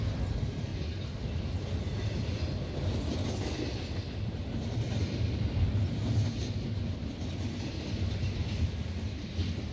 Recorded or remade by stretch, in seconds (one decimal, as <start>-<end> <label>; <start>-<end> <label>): 0.0-9.7 recorded